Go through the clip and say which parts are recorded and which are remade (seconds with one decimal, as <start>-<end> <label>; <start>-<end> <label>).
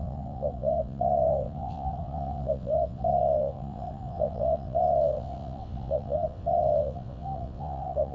0.0-8.1 remade